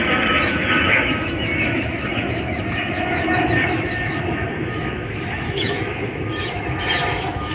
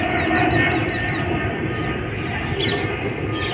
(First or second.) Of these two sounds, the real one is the second